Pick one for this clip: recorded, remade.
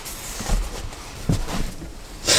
remade